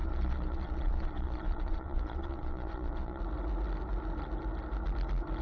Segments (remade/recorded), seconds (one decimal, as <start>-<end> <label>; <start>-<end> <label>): 0.0-3.2 remade; 3.2-5.4 recorded